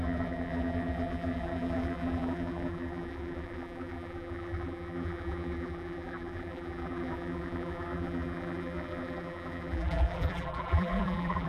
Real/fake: fake